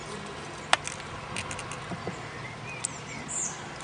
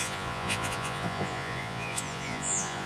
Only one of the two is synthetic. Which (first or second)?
second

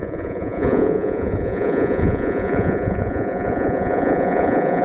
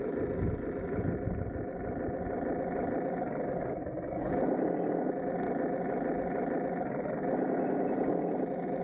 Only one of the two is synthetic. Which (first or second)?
first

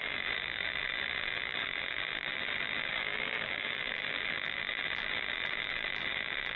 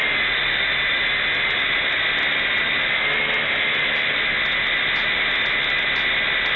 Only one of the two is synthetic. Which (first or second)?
first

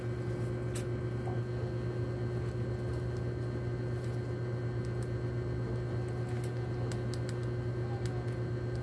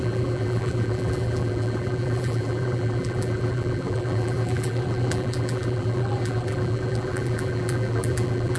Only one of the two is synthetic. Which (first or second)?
second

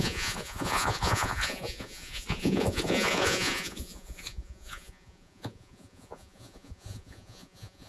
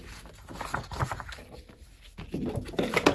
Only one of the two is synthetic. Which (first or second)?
first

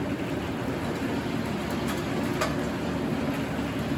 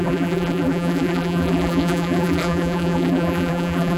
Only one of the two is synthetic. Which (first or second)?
second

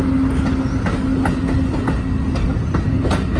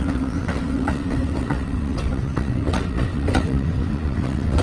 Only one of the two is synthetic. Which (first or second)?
second